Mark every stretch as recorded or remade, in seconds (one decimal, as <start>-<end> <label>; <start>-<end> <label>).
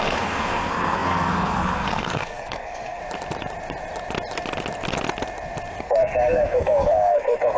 0.0-3.0 remade; 3.0-5.8 recorded; 5.8-7.6 remade